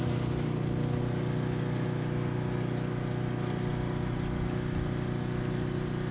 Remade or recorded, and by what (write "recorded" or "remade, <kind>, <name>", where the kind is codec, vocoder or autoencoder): recorded